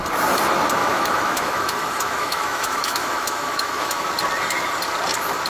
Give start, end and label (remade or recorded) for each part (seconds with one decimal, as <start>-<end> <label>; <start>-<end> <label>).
0.0-0.8 recorded; 0.8-4.1 remade; 4.1-5.5 recorded